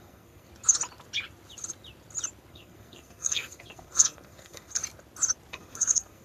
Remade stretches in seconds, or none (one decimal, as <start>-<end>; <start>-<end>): 0.0-0.5; 2.5-4.8; 5.5-6.2